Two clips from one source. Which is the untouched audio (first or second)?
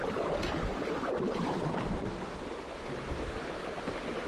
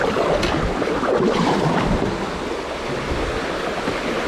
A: second